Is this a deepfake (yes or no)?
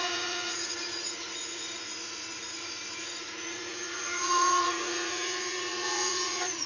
yes